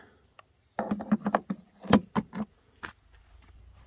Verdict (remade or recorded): recorded